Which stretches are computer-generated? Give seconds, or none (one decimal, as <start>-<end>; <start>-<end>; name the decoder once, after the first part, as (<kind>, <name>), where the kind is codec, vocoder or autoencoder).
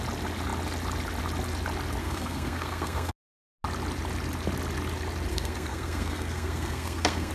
2.0-3.1 (codec, SNAC); 5.3-7.3